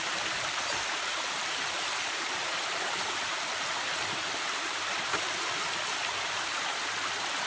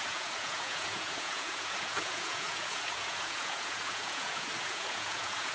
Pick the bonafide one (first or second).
first